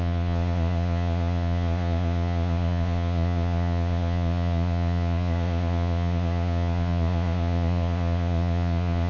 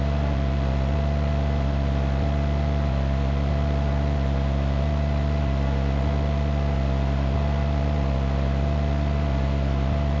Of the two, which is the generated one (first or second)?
first